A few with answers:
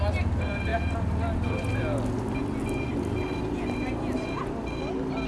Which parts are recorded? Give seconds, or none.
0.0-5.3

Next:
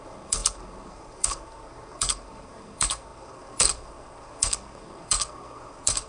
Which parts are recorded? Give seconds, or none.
none